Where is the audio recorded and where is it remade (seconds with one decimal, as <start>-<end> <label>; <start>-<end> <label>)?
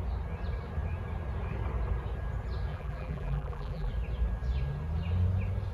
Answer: 0.0-2.7 recorded; 2.7-3.9 remade; 3.9-5.7 recorded